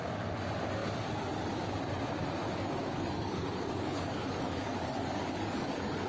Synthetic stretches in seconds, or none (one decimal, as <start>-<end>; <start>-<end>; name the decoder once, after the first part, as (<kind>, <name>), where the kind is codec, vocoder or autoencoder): 2.4-6.1 (codec, DAC)